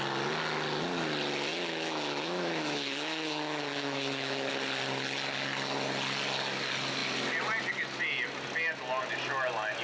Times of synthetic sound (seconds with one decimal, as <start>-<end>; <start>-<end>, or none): 1.5-4.5